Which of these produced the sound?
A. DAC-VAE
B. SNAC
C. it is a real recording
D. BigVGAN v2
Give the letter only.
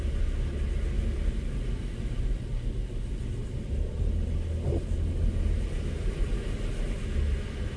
C